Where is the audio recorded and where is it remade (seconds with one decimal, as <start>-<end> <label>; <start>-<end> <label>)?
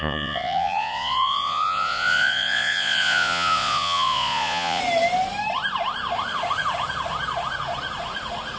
0.0-4.8 remade; 4.8-8.6 recorded